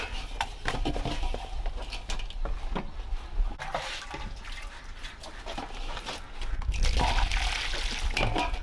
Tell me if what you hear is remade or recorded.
recorded